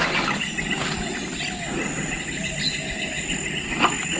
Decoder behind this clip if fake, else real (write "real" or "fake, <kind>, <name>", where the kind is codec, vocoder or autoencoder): real